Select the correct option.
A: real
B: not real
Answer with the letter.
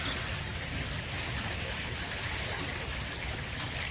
A